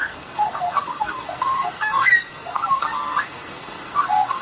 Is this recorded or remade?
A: remade